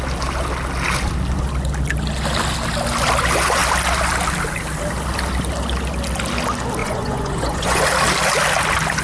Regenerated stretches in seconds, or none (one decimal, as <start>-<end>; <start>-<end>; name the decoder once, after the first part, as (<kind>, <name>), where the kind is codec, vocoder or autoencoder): 6.8-7.8 (vocoder, Vocos)